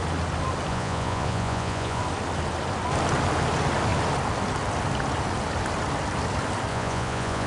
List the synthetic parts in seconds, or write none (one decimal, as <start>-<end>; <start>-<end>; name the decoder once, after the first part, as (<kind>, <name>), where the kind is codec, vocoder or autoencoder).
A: 0.7-2.0 (vocoder, Vocos); 6.7-7.5